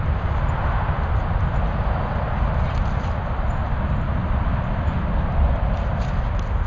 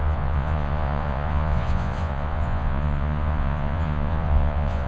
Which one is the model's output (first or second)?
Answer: second